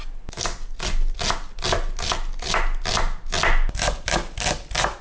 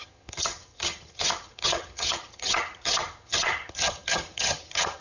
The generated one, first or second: second